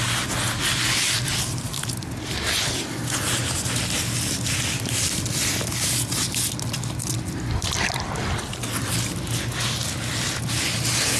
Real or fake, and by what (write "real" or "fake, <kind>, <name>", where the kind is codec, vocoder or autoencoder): real